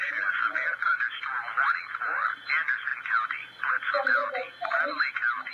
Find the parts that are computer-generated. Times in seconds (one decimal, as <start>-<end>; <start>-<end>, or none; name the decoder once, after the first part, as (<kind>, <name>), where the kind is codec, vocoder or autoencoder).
none

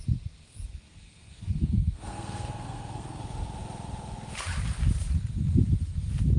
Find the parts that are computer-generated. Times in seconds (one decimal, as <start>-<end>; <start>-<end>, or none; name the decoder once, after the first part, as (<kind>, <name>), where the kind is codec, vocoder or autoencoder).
0.7-3.2 (codec, SNAC)